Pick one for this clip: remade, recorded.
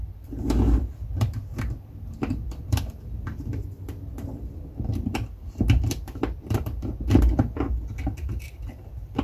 remade